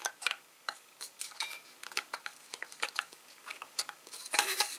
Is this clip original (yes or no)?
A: no